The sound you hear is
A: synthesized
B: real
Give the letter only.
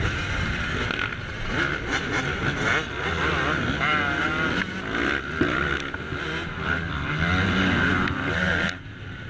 B